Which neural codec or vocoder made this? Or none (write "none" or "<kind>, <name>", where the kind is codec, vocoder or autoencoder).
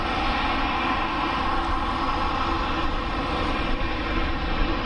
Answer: none